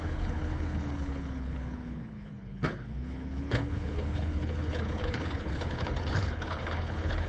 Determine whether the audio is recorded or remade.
remade